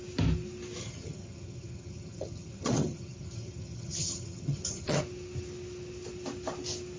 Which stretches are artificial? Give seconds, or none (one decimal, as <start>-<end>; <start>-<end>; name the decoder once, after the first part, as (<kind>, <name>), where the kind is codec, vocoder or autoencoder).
0.8-5.0 (vocoder, HiFi-GAN)